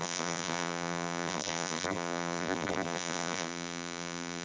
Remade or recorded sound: remade